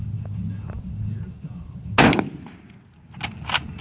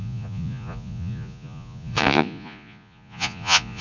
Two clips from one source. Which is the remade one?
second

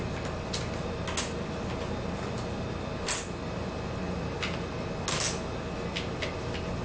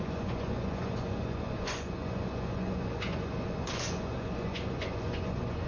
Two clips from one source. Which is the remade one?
second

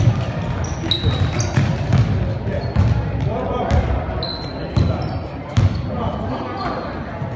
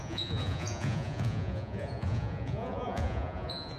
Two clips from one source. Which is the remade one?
second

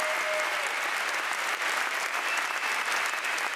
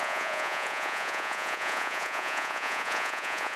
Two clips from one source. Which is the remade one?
second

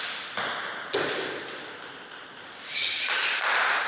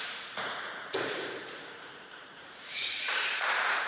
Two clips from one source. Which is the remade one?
second